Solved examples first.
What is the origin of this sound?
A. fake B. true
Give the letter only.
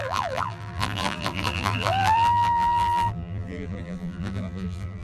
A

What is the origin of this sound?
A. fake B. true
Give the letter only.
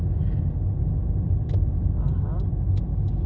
B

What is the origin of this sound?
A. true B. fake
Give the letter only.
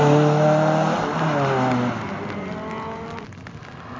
A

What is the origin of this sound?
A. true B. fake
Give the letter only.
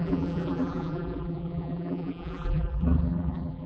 B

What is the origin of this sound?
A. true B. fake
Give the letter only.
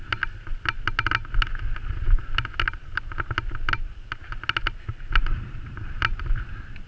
A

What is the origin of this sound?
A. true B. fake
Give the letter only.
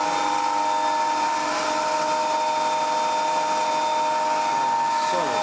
A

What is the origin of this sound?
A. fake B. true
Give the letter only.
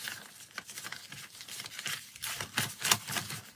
B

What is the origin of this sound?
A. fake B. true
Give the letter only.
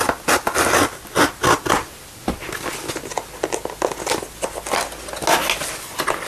B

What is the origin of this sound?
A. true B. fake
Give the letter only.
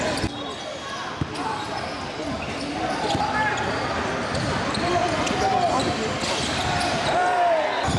A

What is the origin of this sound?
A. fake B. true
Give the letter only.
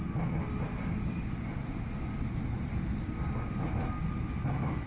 B